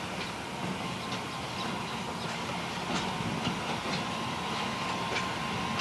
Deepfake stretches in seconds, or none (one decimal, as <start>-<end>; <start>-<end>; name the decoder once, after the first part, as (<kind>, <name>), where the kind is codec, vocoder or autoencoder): none